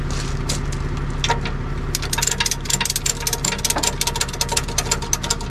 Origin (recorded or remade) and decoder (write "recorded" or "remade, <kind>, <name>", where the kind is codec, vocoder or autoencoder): recorded